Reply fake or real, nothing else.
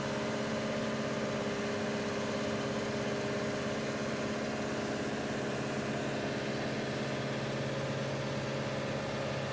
real